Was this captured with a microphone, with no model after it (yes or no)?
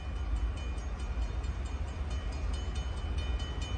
yes